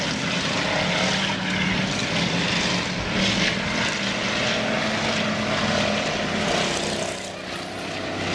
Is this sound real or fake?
real